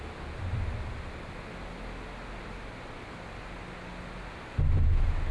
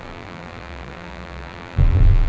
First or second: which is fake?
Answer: second